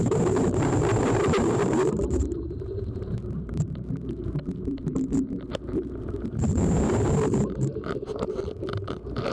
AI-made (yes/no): yes